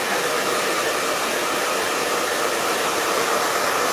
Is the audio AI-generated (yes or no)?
no